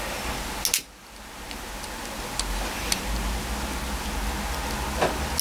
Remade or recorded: recorded